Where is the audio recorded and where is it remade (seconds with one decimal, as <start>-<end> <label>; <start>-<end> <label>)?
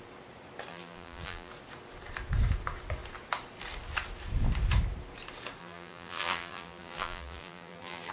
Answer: 0.0-0.7 recorded; 0.7-1.5 remade; 1.5-5.6 recorded; 5.6-8.1 remade